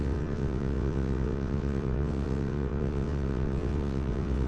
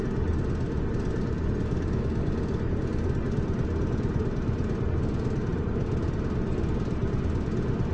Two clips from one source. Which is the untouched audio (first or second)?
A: second